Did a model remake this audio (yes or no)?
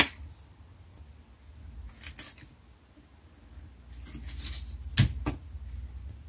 no